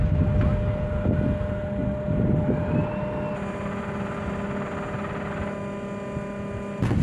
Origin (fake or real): real